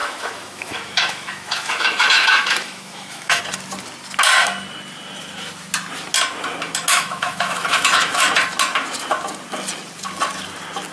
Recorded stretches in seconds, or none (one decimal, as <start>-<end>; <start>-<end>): 3.4-6.9; 8.3-10.9